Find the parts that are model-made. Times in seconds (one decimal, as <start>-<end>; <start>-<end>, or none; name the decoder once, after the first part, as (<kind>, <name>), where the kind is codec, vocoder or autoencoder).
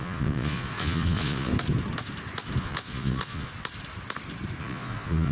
0.0-1.5 (vocoder, Vocos); 2.6-3.5; 4.6-5.3